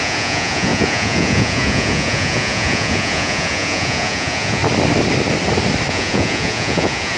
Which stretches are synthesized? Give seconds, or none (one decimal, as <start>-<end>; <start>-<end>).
0.0-4.6; 5.9-7.2